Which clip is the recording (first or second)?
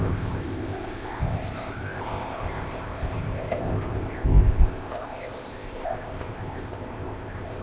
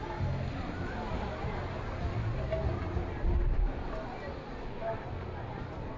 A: second